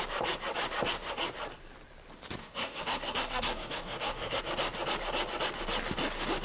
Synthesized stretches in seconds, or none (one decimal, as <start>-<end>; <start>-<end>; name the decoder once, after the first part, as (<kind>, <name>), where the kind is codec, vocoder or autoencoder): 2.4-4.4 (codec, SNAC)